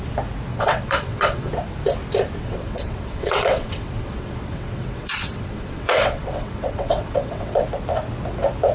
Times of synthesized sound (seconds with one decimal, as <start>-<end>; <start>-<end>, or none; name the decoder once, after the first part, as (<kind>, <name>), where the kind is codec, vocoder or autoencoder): 0.5-1.5 (vocoder, WaveNeXt); 2.4-7.6